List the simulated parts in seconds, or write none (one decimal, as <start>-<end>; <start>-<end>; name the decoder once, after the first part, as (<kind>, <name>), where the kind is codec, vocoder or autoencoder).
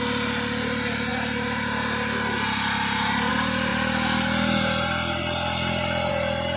none